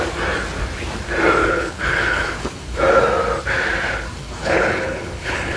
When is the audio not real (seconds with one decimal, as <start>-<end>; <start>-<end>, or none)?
1.4-2.8; 4.2-5.6